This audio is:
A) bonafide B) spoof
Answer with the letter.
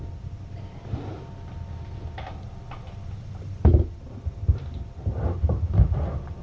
A